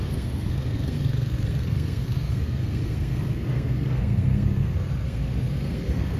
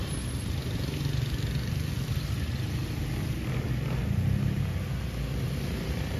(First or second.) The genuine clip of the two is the second